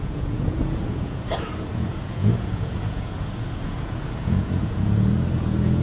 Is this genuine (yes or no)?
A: no